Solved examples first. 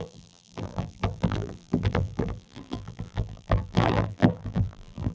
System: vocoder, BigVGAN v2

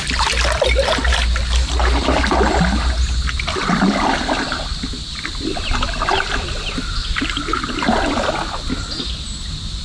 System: none